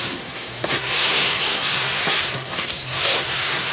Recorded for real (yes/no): no